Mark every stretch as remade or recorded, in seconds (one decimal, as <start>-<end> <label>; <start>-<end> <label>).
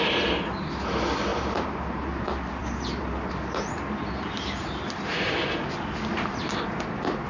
0.0-1.3 recorded; 1.3-2.2 remade; 2.2-2.6 recorded; 2.6-5.3 remade; 5.3-7.3 recorded